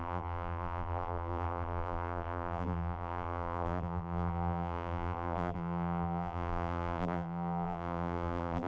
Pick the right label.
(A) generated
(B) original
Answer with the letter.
A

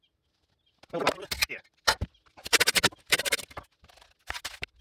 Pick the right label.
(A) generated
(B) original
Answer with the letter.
B